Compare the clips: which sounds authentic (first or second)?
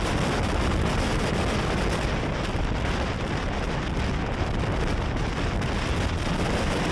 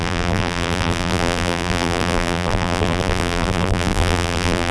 first